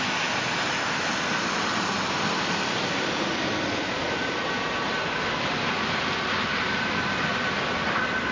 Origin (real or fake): real